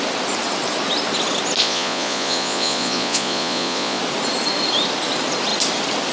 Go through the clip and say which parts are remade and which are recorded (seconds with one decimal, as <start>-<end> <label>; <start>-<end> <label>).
0.0-1.6 recorded; 1.6-4.0 remade; 4.0-6.1 recorded